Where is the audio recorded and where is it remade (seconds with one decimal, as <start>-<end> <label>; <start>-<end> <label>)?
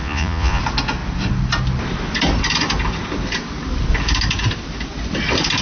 0.0-0.6 remade; 0.6-5.6 recorded